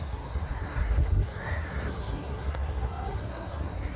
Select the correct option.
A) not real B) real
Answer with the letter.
A